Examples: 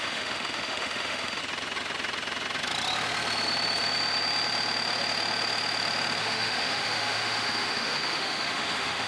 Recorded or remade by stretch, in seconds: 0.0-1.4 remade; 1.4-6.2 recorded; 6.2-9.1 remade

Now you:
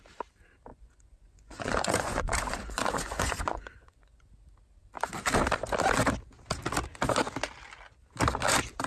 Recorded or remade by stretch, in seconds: 0.0-0.7 recorded; 0.7-4.3 remade; 4.3-8.9 recorded

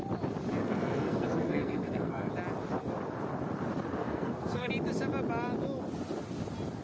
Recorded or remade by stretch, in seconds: 0.0-0.6 recorded; 0.6-2.3 remade; 2.3-4.0 recorded; 4.0-4.7 remade; 4.7-6.8 recorded

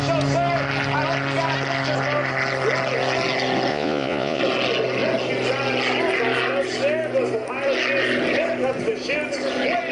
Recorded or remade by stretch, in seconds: 0.0-3.7 recorded; 3.7-4.4 remade; 4.4-9.9 recorded

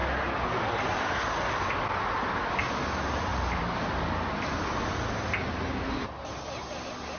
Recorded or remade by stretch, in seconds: 0.0-3.3 recorded; 3.3-4.0 remade; 4.0-7.2 recorded

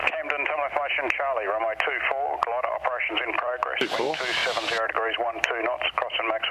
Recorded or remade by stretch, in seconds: 0.0-3.1 recorded; 3.1-6.5 remade

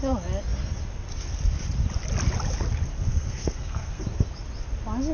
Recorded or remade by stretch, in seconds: 0.0-3.1 recorded; 3.1-4.0 remade; 4.0-5.1 recorded

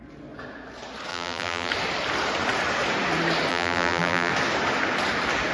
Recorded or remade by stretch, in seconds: 0.0-1.1 recorded; 1.1-1.7 remade; 1.7-3.5 recorded; 3.5-4.3 remade; 4.3-5.5 recorded